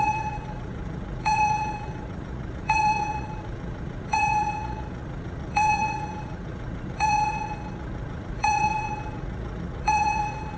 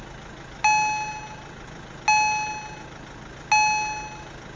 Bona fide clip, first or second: second